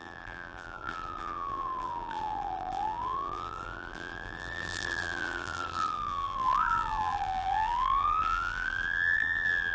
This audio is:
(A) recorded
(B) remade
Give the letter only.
B